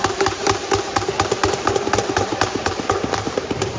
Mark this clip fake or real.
fake